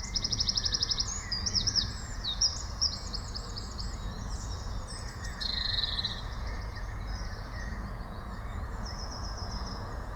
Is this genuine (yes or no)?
no